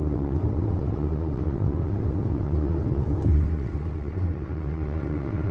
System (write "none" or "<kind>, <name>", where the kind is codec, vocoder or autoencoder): vocoder, WaveNeXt